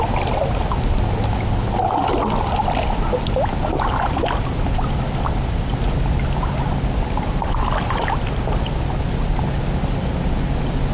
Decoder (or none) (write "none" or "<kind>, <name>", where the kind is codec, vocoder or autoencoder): none